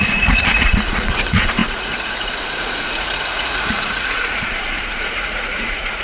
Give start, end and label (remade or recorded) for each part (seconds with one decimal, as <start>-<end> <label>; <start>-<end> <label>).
0.0-6.0 remade